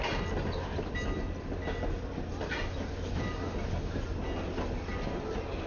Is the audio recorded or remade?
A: recorded